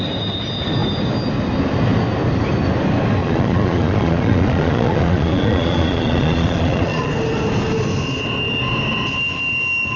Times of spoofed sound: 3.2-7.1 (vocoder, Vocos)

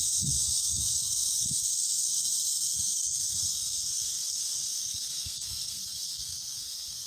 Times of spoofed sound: 0.0-7.1 (codec, SNAC)

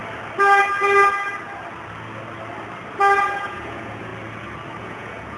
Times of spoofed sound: 3.2-4.1 (vocoder, Vocos); 4.8-5.4

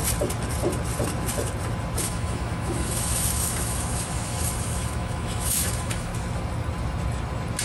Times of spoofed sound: 2.0-6.1 (autoencoder, DAC-VAE)

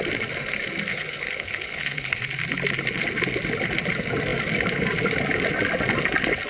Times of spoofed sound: 0.9-2.2 (codec, HILCodec)